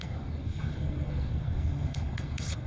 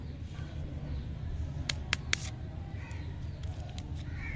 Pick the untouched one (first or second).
second